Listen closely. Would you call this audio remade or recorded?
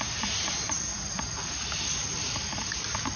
recorded